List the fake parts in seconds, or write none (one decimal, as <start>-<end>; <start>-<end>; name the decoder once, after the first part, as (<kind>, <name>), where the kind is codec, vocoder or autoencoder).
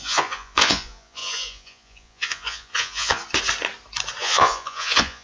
0.0-3.2 (vocoder, Vocos); 4.2-5.2